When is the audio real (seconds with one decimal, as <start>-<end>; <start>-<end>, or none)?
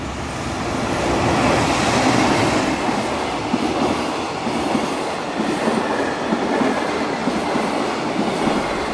0.0-8.9